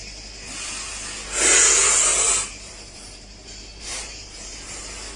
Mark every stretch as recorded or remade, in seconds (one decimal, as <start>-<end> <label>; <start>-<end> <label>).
0.0-2.1 recorded; 2.1-4.8 remade; 4.8-5.2 recorded